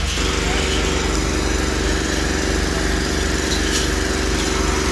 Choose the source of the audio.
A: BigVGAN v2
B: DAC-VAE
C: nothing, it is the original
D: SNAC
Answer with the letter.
C